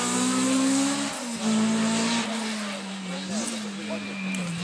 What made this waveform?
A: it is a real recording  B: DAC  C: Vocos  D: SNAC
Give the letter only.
A